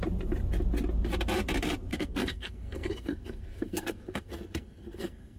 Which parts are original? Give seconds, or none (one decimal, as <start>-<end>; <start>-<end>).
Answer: 0.0-1.9